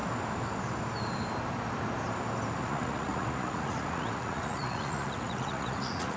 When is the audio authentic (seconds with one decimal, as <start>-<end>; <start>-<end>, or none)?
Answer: 0.0-2.6